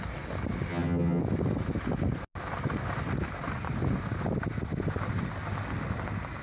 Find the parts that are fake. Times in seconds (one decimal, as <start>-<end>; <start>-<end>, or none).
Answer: 0.7-1.2